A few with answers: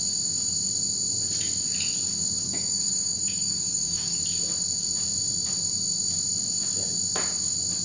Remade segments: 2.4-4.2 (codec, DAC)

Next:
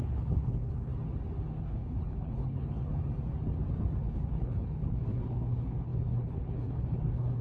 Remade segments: 0.0-0.9 (codec, HILCodec); 1.6-2.9; 4.0-7.4

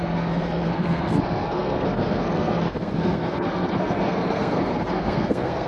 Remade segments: 0.0-5.7 (codec, SNAC)

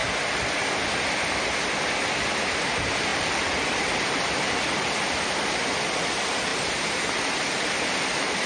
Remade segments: 6.5-7.1 (vocoder, BigVGAN v2)

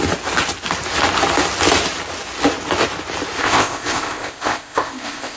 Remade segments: 3.4-5.4 (codec, ZipCodec)

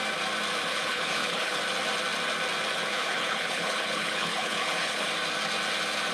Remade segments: 0.7-1.6 (codec, HILCodec); 2.9-5.1

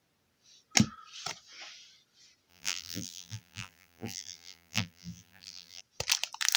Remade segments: 2.5-5.8 (vocoder, BigVGAN v2)